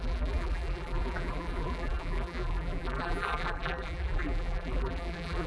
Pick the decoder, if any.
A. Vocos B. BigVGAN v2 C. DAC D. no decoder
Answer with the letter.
B